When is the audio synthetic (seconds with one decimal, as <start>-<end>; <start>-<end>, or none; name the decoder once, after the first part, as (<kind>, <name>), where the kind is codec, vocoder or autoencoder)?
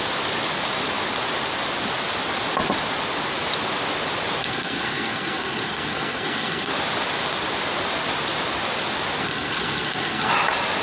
4.4-6.7 (codec, SNAC); 9.2-10.3